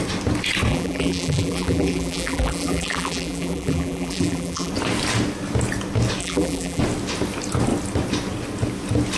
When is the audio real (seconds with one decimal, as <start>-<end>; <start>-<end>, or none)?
0.0-0.7; 4.7-6.2; 6.8-9.2